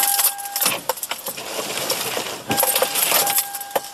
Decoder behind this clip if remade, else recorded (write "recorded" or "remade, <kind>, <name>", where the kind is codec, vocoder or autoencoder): recorded